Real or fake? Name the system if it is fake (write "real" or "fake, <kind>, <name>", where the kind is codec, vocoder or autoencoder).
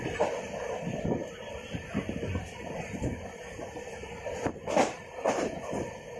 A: real